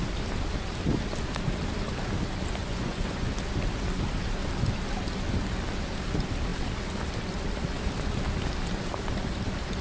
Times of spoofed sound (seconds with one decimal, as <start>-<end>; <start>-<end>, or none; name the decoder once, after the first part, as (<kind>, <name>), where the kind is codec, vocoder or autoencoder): 2.6-3.3 (vocoder, Vocos)